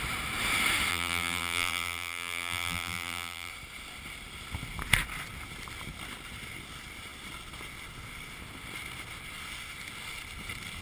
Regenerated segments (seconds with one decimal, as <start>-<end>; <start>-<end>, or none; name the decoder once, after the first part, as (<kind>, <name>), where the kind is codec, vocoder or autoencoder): 0.9-3.5 (vocoder, BigVGAN v2)